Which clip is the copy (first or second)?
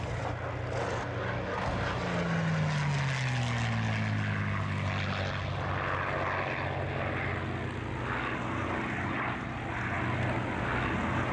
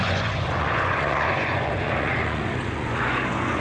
second